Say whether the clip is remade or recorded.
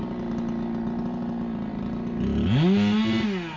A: recorded